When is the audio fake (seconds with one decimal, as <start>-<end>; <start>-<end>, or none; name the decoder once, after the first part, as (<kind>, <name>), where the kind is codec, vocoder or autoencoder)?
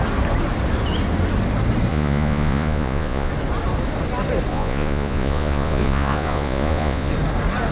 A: 1.9-3.3 (vocoder, Vocos); 4.5-7.1